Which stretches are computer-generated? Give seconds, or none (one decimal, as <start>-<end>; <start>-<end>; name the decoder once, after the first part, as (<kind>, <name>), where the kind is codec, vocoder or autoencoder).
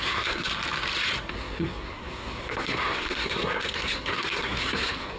0.0-0.5 (codec, SNAC); 1.3-5.2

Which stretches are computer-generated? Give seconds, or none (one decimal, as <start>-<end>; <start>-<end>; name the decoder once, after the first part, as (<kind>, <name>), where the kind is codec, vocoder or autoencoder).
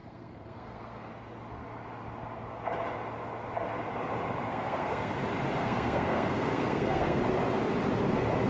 0.0-1.1 (codec, SNAC); 4.5-5.1; 5.6-7.2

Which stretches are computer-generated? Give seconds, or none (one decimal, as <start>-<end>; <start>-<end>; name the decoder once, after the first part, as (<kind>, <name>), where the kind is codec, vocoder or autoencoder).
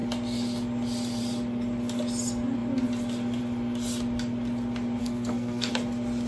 5.0-5.7 (codec, SNAC)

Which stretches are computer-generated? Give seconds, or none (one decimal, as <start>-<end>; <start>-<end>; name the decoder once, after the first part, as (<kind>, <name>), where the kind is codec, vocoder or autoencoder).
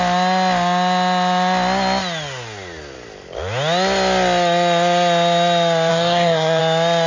5.9-6.6 (codec, SNAC)